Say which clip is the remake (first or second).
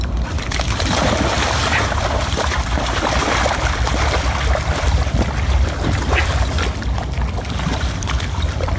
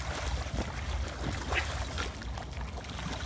first